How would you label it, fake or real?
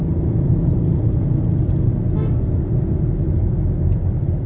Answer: real